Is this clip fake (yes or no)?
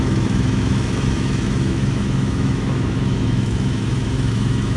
yes